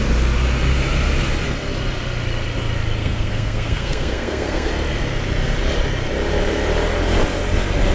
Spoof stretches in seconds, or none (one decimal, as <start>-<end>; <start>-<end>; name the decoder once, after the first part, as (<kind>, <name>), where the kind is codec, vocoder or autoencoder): 3.0-4.7 (codec, SNAC)